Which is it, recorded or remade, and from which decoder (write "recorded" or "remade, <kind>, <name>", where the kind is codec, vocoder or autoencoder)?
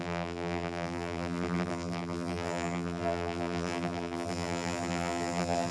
remade, vocoder, BigVGAN v2